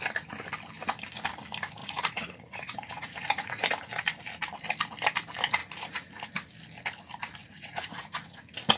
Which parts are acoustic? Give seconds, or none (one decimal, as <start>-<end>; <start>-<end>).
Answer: 0.0-1.8; 3.7-5.6; 6.1-7.4; 8.4-8.8